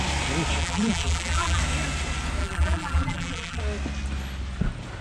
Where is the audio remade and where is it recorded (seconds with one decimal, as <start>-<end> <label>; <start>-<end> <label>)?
0.0-0.6 recorded; 0.6-1.6 remade; 1.6-2.4 recorded; 2.4-3.6 remade; 3.6-5.0 recorded